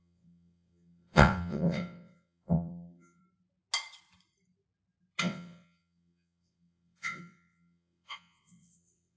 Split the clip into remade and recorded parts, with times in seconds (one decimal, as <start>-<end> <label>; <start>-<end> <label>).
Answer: 0.0-3.2 remade; 3.2-5.2 recorded; 5.2-9.2 remade